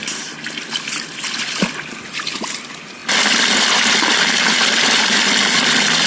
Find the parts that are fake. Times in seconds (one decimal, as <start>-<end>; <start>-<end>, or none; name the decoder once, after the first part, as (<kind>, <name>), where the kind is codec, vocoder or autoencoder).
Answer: 0.0-1.1 (vocoder, BigVGAN v2)